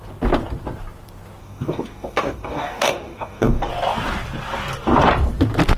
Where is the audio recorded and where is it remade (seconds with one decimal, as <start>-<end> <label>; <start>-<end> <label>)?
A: 0.0-1.4 recorded; 1.4-3.7 remade; 3.7-5.8 recorded